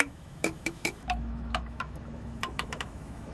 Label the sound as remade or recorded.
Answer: remade